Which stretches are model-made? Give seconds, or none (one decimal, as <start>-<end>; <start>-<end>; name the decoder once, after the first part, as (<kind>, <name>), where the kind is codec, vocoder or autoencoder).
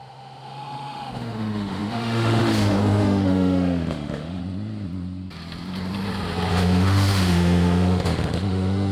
0.0-4.4 (autoencoder, DAC-VAE); 6.5-8.9